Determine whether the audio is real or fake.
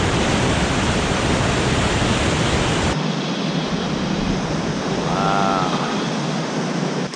real